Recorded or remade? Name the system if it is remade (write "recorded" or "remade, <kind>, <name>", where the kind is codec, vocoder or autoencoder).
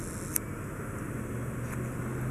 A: recorded